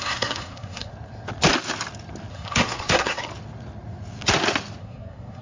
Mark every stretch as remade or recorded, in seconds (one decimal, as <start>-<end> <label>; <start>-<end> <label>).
0.0-0.9 remade; 0.9-2.3 recorded; 2.3-3.3 remade; 3.3-4.8 recorded; 4.8-5.4 remade